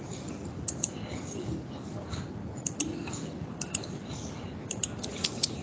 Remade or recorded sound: recorded